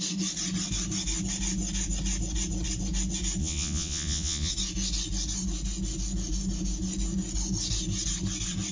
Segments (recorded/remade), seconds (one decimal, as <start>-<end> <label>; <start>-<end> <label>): 0.0-3.4 recorded; 3.4-4.5 remade; 4.5-8.7 recorded